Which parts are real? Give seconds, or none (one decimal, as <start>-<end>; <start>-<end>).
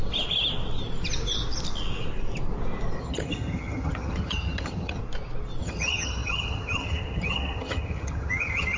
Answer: 0.0-3.0; 5.0-5.6